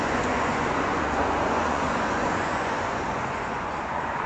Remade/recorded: remade